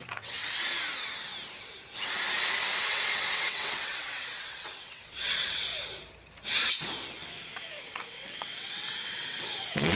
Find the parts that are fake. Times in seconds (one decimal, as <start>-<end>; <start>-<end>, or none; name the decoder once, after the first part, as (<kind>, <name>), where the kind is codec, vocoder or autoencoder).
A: 0.0-0.4 (vocoder, WaveNeXt); 2.8-5.7; 7.8-10.0